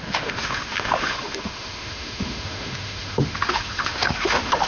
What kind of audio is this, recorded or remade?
remade